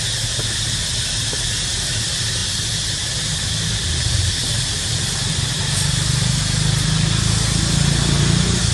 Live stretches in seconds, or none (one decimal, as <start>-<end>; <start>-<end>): 0.0-8.7